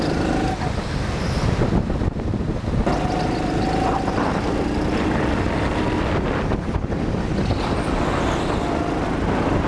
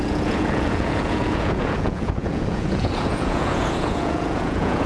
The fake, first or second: second